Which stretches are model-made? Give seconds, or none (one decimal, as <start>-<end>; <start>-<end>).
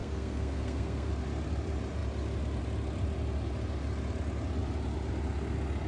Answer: 0.0-1.1